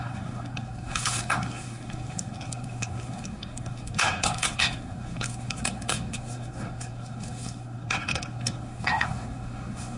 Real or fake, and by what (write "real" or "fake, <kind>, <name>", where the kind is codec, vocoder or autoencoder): fake, codec, SNAC